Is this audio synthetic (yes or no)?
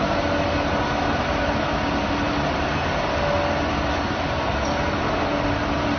no